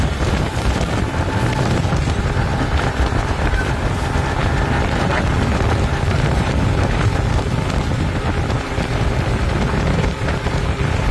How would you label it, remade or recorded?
recorded